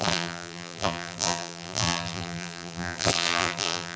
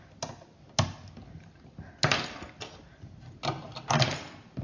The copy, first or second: first